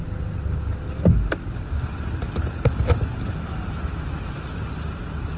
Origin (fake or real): real